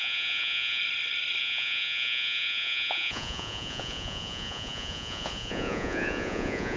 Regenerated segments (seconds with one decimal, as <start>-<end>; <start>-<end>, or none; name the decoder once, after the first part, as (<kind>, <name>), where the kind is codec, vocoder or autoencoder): 0.0-0.8 (vocoder, Vocos); 1.4-6.8